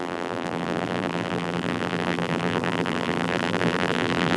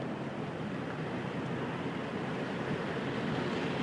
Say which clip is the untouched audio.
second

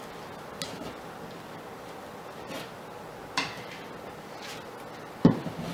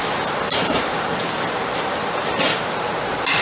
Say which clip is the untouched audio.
first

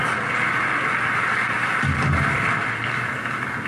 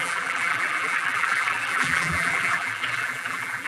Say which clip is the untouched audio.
first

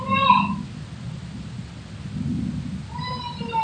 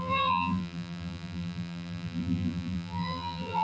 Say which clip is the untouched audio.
first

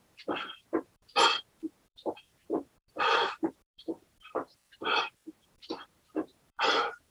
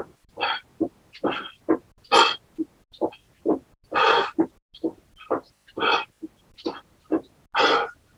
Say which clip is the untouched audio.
second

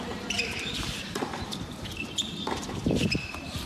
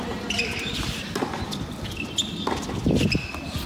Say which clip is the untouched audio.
second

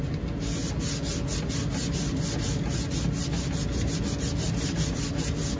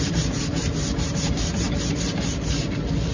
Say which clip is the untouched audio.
first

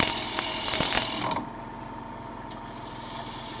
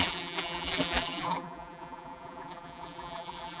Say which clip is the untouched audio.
first